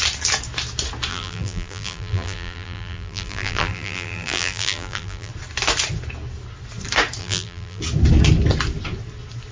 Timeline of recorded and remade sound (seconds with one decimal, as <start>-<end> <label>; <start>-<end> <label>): 0.0-1.1 recorded; 1.1-5.3 remade; 5.3-7.2 recorded; 7.2-7.8 remade; 7.8-9.5 recorded